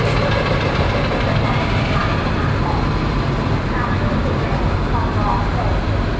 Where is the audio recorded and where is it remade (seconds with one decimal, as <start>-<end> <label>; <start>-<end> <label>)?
0.0-6.2 recorded